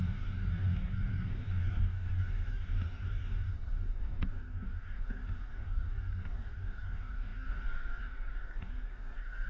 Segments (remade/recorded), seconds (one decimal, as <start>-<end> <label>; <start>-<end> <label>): 0.0-9.5 remade